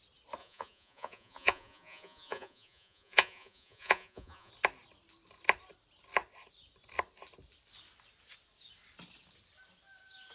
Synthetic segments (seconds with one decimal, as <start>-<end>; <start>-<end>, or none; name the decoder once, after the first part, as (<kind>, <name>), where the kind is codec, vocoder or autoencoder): 0.4-4.5 (vocoder, Vocos)